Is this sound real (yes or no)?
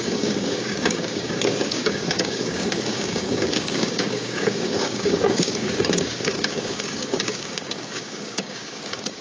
no